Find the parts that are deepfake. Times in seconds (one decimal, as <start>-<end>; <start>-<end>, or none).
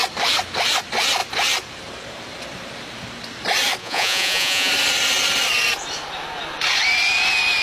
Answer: 3.8-4.7